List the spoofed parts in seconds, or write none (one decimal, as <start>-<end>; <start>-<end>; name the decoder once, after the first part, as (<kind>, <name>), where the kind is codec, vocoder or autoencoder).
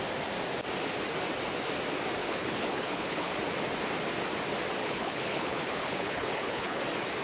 2.2-3.3 (codec, HILCodec); 4.8-6.8